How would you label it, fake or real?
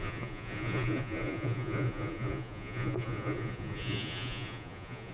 fake